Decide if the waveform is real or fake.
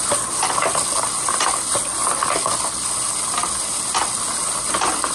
real